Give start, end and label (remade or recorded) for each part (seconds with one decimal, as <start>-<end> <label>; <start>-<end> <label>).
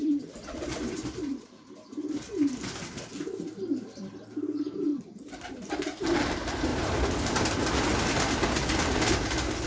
0.0-2.1 remade; 2.1-4.9 recorded; 4.9-5.7 remade; 5.7-9.7 recorded